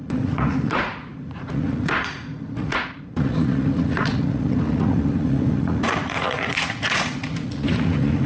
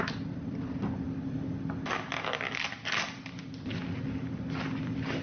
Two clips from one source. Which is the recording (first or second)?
second